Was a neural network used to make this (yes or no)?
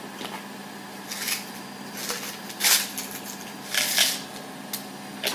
no